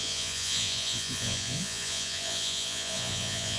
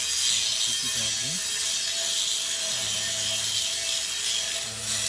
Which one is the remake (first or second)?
first